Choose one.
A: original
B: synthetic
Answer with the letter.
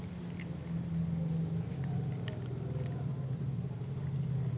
A